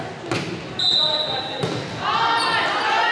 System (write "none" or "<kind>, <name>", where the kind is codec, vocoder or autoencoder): none